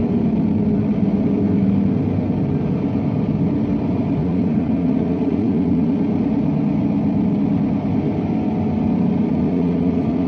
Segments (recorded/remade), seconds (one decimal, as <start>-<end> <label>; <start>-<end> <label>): 0.0-4.2 recorded; 4.2-5.9 remade; 5.9-9.3 recorded; 9.3-10.3 remade